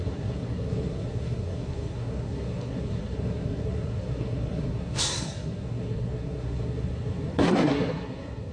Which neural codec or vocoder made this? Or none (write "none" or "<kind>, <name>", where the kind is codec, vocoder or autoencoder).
codec, SNAC